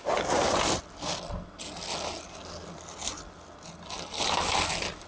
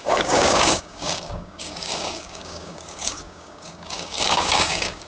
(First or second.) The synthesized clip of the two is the second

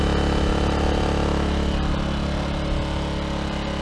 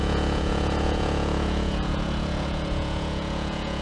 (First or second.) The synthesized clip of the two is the second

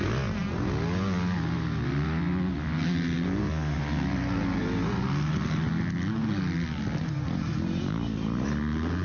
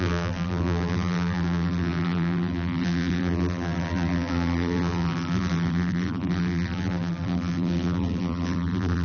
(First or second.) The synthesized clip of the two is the second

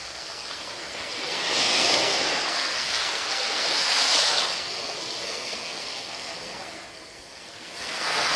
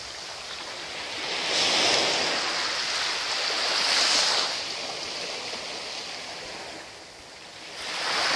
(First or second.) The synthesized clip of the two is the first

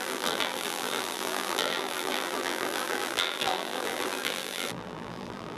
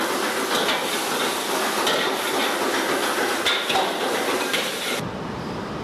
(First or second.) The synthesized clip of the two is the first